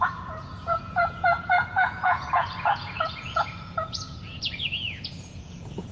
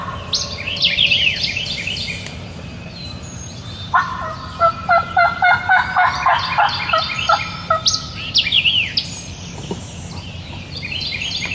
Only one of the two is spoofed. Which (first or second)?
first